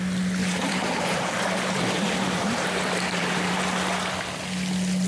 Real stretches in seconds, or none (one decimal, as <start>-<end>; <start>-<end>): 0.0-0.4; 3.5-5.1